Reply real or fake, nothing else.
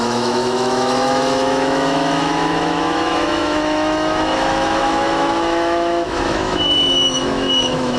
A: fake